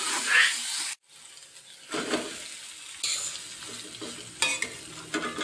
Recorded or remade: recorded